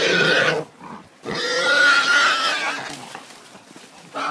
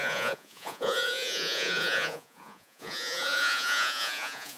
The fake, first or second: second